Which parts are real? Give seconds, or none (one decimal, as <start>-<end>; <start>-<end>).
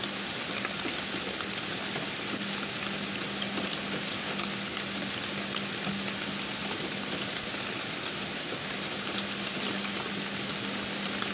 0.0-11.3